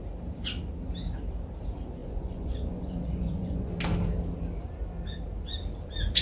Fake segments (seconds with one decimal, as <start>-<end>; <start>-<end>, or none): 2.0-3.7